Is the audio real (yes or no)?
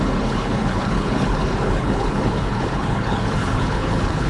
no